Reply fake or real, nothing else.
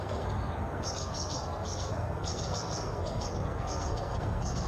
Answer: fake